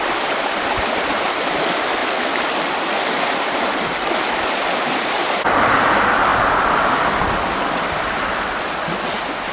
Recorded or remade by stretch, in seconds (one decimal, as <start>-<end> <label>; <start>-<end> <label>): 0.0-2.0 remade; 2.0-4.8 recorded; 4.8-6.3 remade; 6.3-7.7 recorded; 7.7-9.5 remade

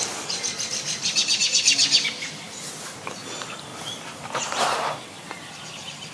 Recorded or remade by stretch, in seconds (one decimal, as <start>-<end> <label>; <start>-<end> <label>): 0.0-1.4 remade; 1.4-1.9 recorded; 1.9-6.1 remade